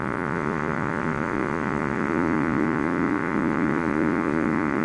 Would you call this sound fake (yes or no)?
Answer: yes